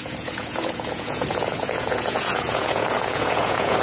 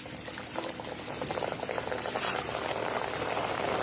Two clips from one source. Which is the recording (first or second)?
second